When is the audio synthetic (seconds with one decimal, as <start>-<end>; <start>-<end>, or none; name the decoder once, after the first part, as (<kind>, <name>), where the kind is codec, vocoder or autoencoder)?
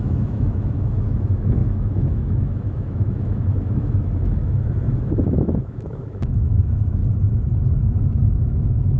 0.0-7.0 (autoencoder, DAC-VAE); 8.3-9.0